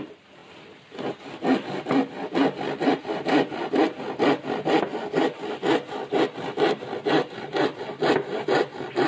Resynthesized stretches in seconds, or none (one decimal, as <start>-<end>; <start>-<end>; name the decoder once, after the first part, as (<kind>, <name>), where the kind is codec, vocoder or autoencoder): none